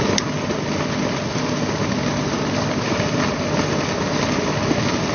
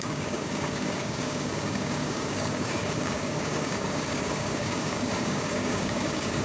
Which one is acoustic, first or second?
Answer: first